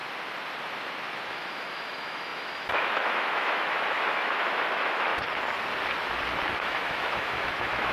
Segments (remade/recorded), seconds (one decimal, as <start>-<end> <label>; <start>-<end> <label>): 0.0-1.1 recorded; 1.1-5.1 remade; 5.1-6.6 recorded; 6.6-7.9 remade